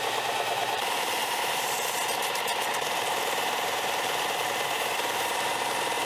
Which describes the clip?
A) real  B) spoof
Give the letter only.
B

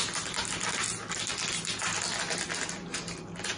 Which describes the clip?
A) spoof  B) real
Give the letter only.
B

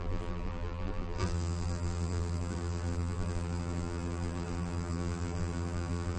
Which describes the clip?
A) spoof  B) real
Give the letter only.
A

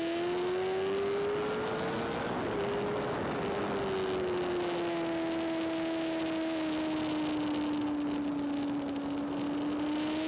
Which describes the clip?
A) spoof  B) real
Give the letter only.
B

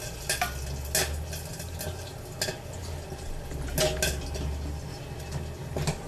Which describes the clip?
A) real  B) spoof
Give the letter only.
A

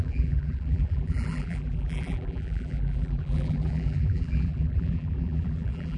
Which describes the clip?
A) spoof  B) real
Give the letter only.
A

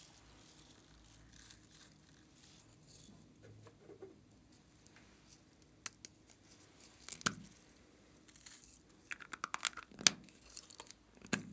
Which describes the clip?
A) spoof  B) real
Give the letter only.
B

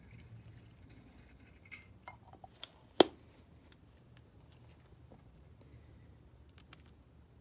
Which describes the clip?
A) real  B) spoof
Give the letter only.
A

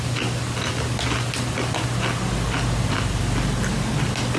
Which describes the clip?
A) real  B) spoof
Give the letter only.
A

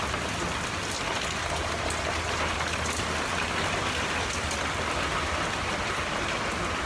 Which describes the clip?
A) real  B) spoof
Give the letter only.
A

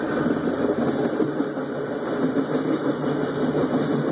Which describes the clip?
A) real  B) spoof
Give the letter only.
A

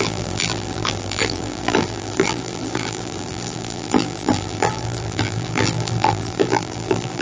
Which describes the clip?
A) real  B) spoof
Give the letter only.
B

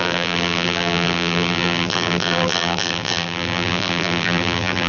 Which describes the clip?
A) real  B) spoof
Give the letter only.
B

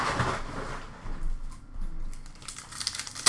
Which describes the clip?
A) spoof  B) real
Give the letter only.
B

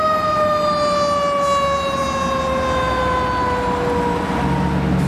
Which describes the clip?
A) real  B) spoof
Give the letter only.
A